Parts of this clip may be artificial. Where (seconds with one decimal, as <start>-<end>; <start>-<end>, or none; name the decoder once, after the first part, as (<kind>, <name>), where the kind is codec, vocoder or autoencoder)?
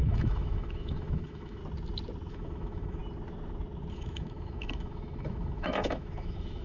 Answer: 0.0-1.6 (autoencoder, DAC-VAE); 2.3-3.0; 3.9-6.6